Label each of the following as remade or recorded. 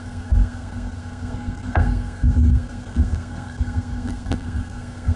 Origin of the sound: remade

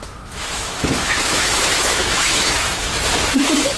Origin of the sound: remade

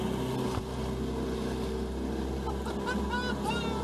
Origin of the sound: recorded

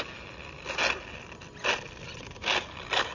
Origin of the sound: recorded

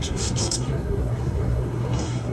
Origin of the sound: remade